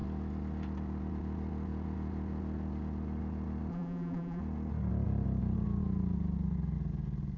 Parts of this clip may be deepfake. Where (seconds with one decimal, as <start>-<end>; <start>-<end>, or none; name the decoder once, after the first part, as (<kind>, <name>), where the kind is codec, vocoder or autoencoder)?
3.7-4.4 (vocoder, BigVGAN v2)